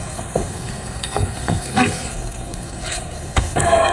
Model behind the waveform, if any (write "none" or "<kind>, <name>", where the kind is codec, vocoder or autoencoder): codec, SNAC